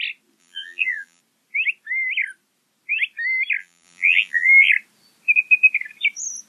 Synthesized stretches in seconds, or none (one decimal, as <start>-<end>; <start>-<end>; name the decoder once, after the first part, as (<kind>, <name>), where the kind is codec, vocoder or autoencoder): 0.4-1.2 (vocoder, BigVGAN v2); 3.6-4.7